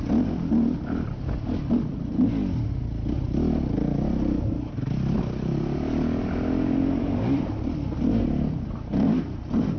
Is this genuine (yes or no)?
yes